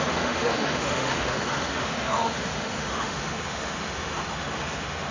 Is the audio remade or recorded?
remade